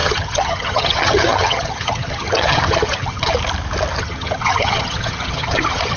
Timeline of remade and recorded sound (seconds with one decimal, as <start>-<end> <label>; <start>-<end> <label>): 0.0-3.3 remade; 3.3-4.0 recorded; 4.0-6.0 remade

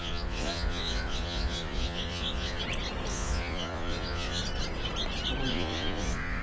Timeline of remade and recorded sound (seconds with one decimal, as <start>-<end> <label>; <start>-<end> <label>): 0.0-2.6 remade; 2.6-3.1 recorded; 3.1-4.4 remade; 4.4-5.5 recorded; 5.5-6.4 remade

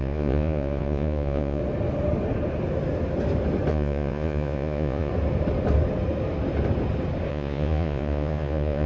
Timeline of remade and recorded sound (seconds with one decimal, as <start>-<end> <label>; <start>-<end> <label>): 0.0-1.6 remade; 1.6-3.7 recorded; 3.7-5.1 remade; 5.1-7.3 recorded; 7.3-8.9 remade